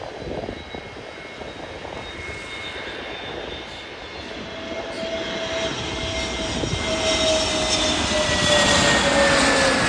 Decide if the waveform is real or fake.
real